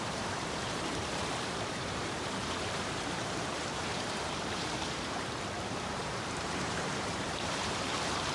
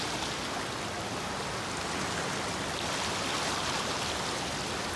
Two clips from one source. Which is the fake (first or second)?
first